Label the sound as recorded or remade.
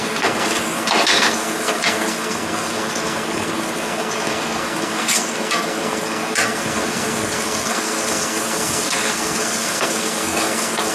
remade